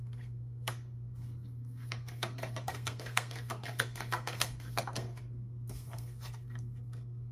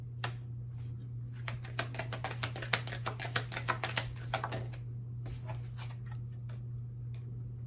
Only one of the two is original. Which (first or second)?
second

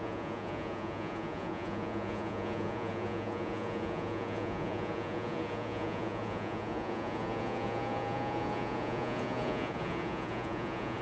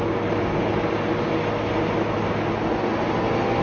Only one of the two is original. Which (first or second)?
second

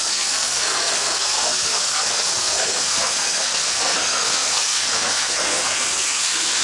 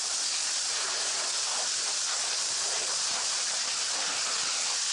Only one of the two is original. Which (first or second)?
second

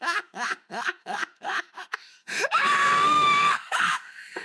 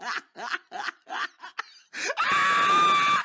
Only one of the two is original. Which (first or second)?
second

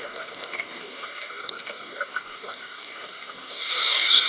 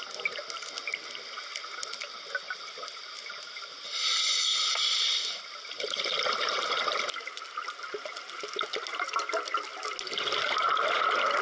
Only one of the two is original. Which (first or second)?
second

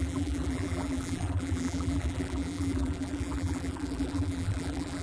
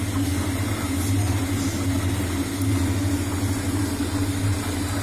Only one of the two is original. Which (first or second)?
second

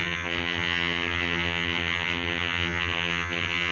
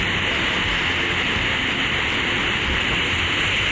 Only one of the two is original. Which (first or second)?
second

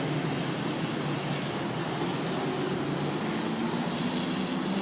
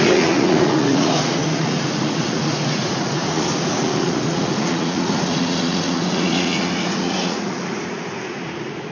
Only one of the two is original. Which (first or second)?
first